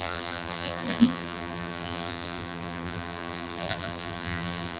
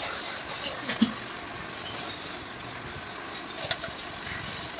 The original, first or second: second